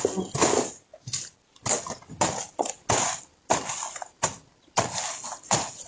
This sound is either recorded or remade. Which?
recorded